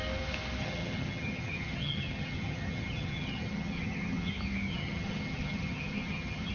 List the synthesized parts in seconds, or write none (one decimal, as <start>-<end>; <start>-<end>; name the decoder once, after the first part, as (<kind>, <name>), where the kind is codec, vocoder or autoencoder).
0.6-4.3 (vocoder, HiFi-GAN); 4.7-6.5